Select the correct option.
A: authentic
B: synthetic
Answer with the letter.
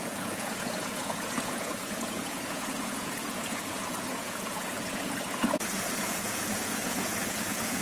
B